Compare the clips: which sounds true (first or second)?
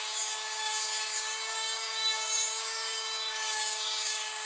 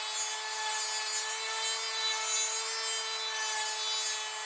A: second